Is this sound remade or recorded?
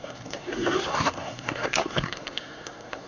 remade